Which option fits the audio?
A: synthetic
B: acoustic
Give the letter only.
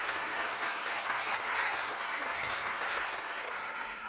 A